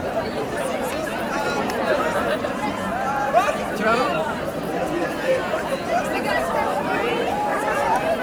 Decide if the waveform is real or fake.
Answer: fake